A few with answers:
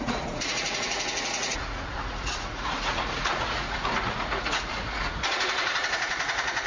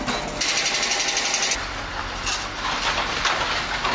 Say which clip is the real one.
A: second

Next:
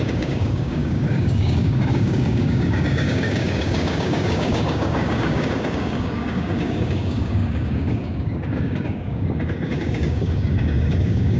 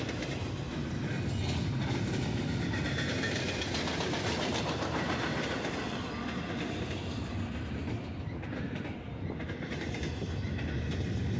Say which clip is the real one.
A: second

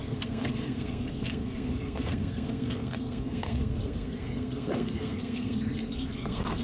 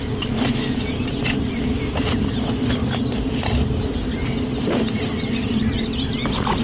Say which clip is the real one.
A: second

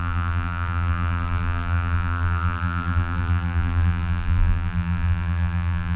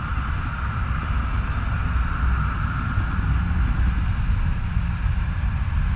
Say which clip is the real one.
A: second